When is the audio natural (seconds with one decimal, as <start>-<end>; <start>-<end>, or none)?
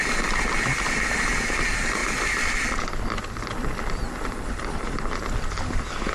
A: 0.0-6.1